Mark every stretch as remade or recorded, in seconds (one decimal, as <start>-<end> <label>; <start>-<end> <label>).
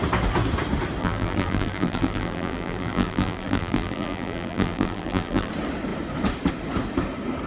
0.0-1.0 recorded; 1.0-5.5 remade; 5.5-7.5 recorded